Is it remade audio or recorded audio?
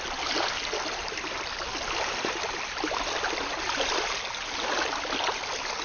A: recorded